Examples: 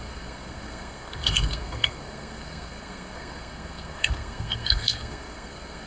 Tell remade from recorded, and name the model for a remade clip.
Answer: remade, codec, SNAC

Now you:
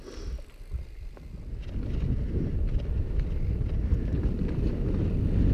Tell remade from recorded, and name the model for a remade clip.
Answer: recorded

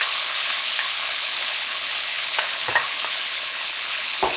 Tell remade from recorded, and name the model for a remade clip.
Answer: remade, codec, HILCodec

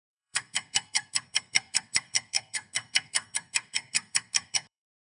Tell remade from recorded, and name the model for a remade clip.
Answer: remade, codec, SNAC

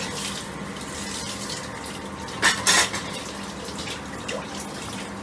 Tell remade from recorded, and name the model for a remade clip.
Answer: recorded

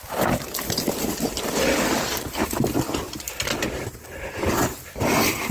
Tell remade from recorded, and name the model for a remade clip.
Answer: recorded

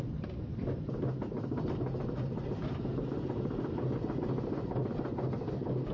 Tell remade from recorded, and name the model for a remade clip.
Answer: recorded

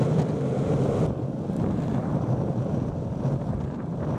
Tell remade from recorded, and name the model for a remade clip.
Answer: recorded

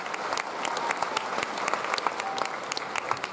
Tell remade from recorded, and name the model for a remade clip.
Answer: recorded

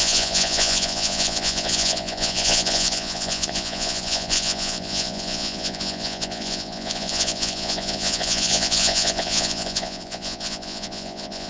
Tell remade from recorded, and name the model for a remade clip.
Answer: remade, vocoder, Vocos